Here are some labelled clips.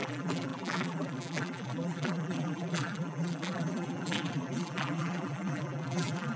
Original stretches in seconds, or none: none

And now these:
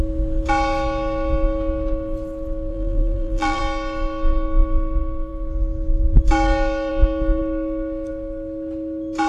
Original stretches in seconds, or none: 0.0-2.7; 3.6-9.3

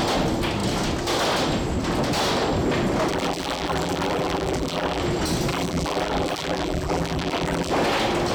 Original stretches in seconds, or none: 0.0-3.1; 5.0-5.5; 7.7-8.3

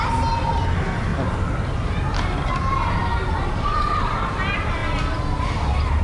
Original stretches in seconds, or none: 0.0-1.1; 2.0-3.0; 4.3-4.8

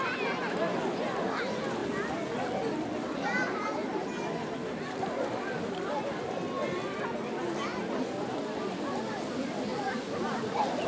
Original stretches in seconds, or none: 0.0-10.9

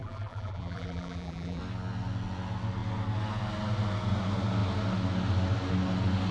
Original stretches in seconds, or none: 1.6-6.3

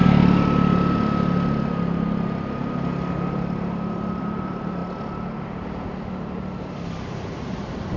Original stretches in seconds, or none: 0.0-4.2; 4.8-7.0

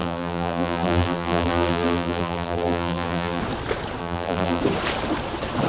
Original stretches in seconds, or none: 3.4-4.0; 4.6-5.7